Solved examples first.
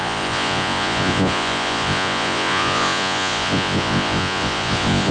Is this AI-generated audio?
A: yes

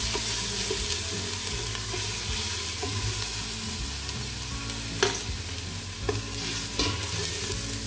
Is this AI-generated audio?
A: no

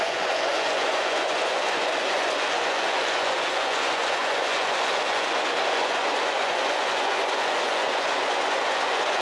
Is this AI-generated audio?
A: yes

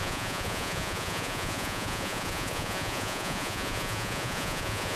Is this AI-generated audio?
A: yes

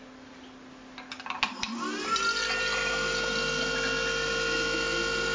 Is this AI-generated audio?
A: no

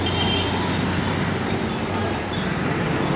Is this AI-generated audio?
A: no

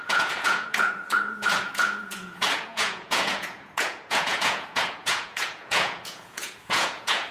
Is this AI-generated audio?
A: yes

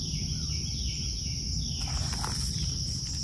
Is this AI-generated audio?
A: no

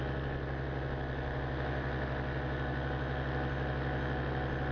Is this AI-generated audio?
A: no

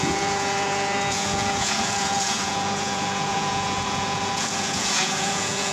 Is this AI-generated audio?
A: yes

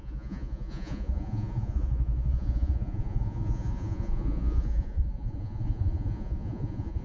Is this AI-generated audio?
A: yes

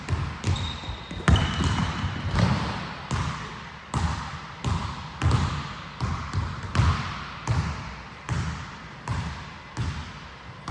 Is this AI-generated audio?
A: no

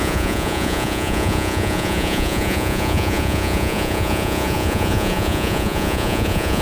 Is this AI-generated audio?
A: yes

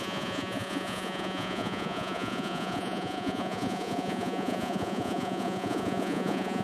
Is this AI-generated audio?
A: yes